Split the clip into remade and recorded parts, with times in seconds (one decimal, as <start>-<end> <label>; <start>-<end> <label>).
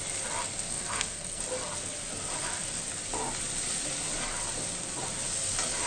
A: 0.0-0.7 recorded; 0.7-1.4 remade; 1.4-5.9 recorded